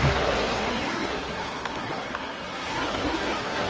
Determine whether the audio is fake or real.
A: fake